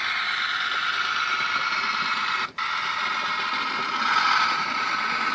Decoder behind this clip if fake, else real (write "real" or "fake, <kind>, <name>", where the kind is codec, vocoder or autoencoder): real